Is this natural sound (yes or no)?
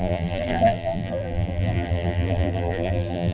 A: no